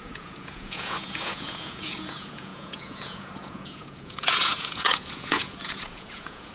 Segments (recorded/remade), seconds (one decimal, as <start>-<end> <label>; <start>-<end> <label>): 0.0-6.5 remade